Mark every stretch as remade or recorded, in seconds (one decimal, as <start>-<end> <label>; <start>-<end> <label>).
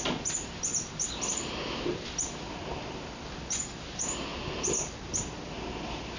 0.0-6.2 recorded